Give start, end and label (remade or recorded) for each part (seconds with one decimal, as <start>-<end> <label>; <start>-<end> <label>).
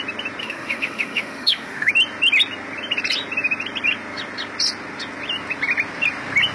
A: 0.0-0.4 recorded; 0.4-1.9 remade; 1.9-6.5 recorded